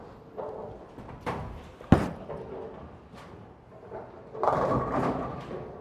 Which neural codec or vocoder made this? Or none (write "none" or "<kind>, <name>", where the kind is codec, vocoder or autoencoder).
none